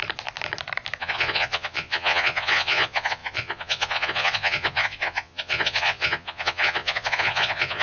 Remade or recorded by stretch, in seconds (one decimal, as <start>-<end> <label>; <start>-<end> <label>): 0.0-1.0 recorded; 1.0-7.8 remade